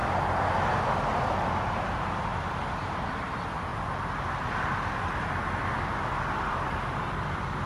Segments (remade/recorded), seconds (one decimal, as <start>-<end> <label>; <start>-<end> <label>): 0.0-1.8 recorded; 1.8-2.3 remade; 2.3-2.8 recorded; 2.8-3.7 remade; 3.7-6.5 recorded; 6.5-7.7 remade

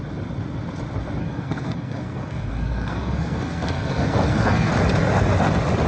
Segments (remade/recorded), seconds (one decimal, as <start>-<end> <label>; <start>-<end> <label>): 0.0-1.2 recorded; 1.2-4.7 remade; 4.7-5.9 recorded

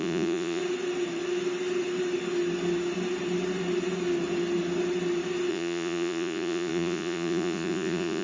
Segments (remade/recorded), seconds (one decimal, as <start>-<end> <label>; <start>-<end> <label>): 0.0-0.6 remade; 0.6-5.5 recorded; 5.5-8.2 remade

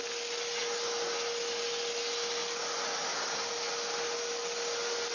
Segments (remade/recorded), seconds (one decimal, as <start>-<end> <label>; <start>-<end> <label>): 0.0-5.1 recorded

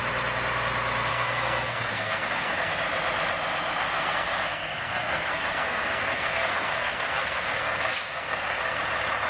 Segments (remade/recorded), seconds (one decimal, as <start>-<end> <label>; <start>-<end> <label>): 0.0-1.1 recorded; 1.1-2.7 remade; 2.7-3.8 recorded; 3.8-8.8 remade; 8.8-9.3 recorded